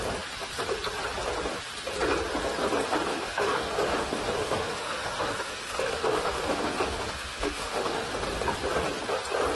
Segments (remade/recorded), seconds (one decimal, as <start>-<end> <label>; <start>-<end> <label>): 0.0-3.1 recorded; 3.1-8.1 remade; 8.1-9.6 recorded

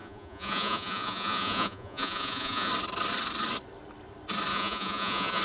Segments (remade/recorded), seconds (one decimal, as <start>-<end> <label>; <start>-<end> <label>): 0.0-2.7 remade; 2.7-4.5 recorded; 4.5-5.4 remade

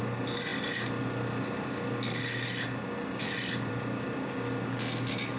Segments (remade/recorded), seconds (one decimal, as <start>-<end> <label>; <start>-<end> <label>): 0.0-5.4 recorded